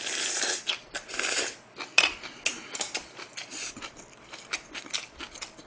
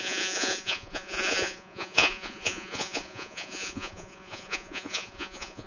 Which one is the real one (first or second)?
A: first